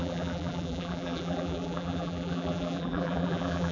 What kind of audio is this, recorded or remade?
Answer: remade